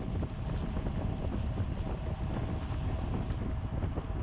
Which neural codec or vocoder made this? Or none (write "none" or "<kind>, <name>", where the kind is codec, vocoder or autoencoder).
none